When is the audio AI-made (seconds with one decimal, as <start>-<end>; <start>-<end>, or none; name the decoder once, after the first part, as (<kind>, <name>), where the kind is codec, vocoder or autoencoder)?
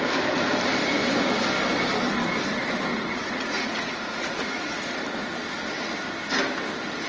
2.9-4.9 (vocoder, Vocos)